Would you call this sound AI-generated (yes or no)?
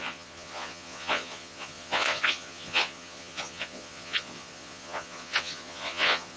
yes